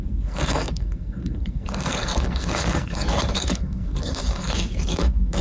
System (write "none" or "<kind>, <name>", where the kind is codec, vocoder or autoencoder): codec, SNAC